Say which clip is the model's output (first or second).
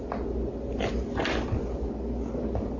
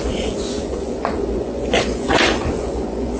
second